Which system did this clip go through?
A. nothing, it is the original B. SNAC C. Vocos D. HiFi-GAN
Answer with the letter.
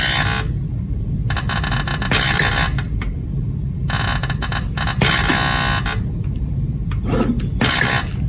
A